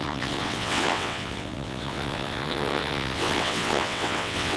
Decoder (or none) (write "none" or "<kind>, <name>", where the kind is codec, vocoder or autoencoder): vocoder, WaveNeXt